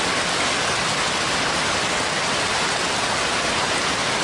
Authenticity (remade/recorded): recorded